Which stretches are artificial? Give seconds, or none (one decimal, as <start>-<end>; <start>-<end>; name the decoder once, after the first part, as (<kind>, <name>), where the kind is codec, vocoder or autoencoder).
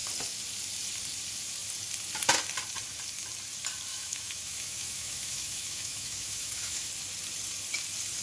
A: 3.9-6.9 (autoencoder, DAC-VAE)